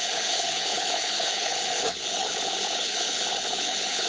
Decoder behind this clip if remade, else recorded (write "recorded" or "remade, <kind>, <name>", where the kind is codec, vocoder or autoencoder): remade, codec, HILCodec